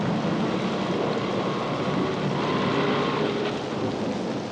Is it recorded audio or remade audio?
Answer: recorded